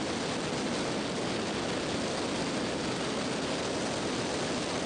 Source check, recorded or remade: recorded